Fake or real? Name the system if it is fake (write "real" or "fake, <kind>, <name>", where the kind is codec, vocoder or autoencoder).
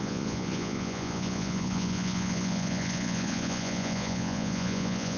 fake, vocoder, Vocos